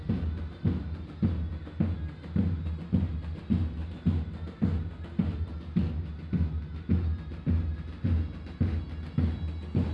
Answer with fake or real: real